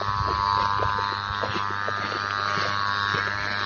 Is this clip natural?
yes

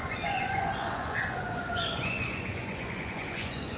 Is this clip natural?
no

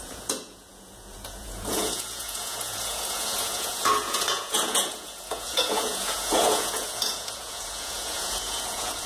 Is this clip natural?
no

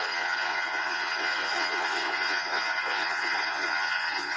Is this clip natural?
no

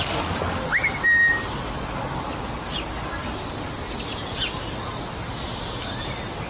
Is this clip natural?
yes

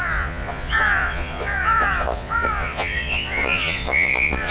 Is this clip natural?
no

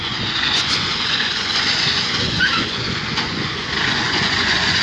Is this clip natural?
no